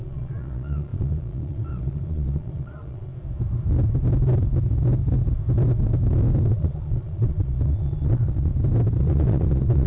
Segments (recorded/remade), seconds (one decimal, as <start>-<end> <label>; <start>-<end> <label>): 0.0-3.1 remade; 3.1-6.5 recorded; 6.5-8.5 remade; 8.5-9.0 recorded; 9.0-9.9 remade